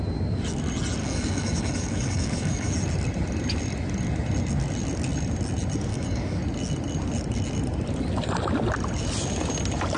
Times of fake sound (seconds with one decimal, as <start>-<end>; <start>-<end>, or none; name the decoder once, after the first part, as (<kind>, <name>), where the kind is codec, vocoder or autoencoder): 1.0-2.7 (codec, DAC); 5.9-6.4